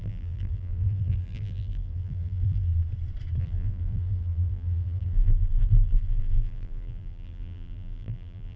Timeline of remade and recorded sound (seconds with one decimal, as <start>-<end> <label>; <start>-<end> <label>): 0.0-2.7 remade; 2.7-3.4 recorded; 3.4-8.6 remade